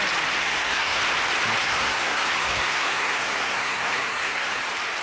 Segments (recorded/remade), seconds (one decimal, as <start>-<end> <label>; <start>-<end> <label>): 0.0-0.4 recorded; 0.4-1.0 remade; 1.0-1.6 recorded; 1.6-4.6 remade; 4.6-5.0 recorded